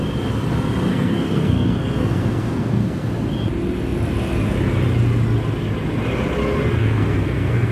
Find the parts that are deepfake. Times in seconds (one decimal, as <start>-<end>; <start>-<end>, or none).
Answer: 0.9-3.1; 6.7-7.7